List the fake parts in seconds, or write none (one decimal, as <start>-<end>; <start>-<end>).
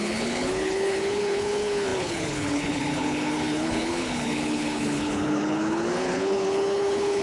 0.0-7.2